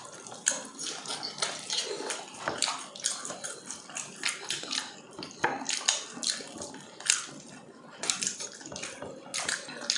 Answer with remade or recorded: recorded